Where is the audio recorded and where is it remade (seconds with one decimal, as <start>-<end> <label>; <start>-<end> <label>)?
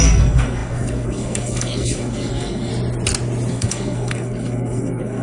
0.0-2.7 remade; 2.7-3.5 recorded; 3.5-5.2 remade